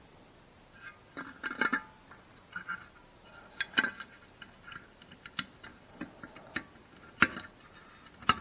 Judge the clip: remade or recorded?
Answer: recorded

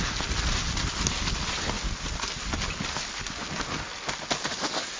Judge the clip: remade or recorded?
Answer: recorded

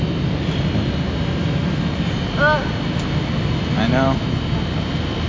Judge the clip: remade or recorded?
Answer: recorded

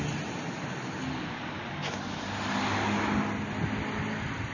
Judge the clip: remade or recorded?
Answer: recorded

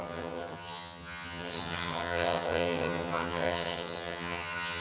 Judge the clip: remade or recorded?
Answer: remade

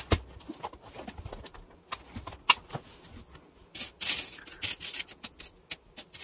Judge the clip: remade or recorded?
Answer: recorded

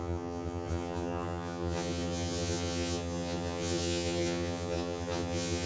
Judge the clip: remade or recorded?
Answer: remade